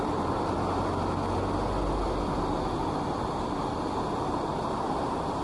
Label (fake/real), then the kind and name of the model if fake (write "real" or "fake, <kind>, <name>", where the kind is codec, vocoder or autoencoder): real